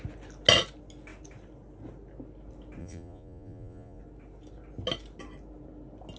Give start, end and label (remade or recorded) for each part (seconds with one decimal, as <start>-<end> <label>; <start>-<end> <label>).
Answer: 0.0-2.8 recorded; 2.8-4.0 remade; 4.0-6.2 recorded